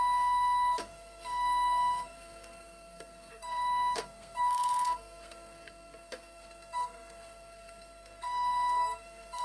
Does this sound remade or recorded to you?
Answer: remade